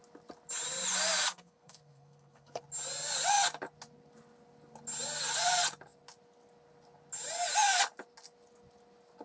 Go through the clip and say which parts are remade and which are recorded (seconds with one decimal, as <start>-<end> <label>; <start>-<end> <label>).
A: 0.0-1.3 recorded; 1.3-2.6 remade; 2.6-9.2 recorded